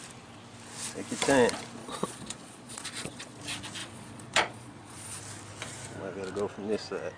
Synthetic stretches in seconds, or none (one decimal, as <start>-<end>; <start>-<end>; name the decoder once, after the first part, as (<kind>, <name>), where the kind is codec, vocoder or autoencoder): 1.8-3.4 (vocoder, Vocos); 3.8-5.2